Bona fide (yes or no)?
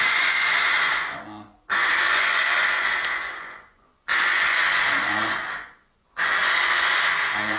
no